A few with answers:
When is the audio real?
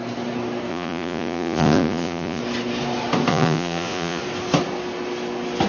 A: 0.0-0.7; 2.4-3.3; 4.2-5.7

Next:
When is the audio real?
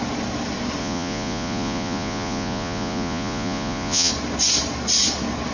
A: 0.0-0.8; 4.1-5.5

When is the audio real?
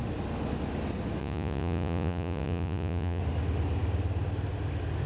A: 0.0-1.2; 3.2-5.1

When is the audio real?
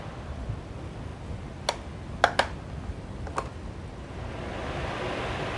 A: 0.0-5.6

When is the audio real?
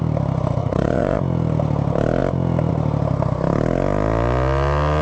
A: 0.0-0.6; 1.2-5.0